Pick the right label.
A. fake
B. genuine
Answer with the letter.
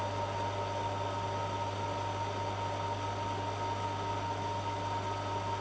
B